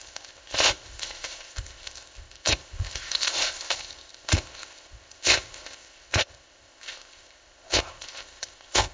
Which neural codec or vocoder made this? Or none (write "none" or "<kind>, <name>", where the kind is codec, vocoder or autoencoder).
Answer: codec, ZipCodec